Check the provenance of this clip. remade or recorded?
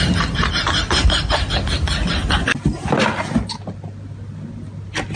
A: recorded